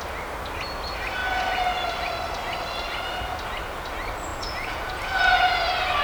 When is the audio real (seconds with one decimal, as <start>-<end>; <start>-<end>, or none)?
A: 0.0-4.3; 5.0-6.0